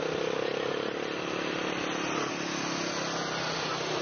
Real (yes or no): yes